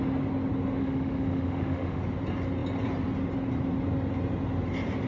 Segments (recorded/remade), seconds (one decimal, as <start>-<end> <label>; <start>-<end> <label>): 0.0-0.8 recorded; 0.8-2.0 remade; 2.0-5.1 recorded